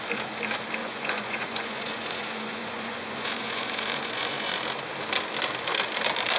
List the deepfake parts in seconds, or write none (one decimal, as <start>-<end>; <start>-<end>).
0.8-4.6